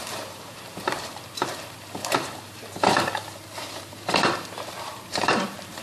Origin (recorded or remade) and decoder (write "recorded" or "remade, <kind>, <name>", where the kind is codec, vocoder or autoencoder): remade, vocoder, BigVGAN v2